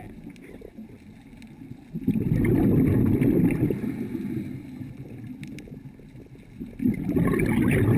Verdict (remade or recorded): recorded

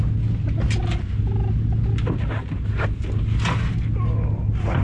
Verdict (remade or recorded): recorded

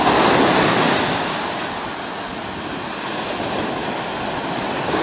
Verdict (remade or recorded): recorded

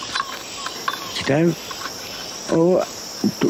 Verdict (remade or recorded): recorded